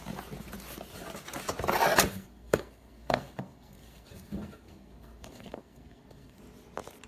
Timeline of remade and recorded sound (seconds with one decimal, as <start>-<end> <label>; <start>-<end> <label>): 0.0-2.1 recorded; 2.1-6.4 remade; 6.4-7.1 recorded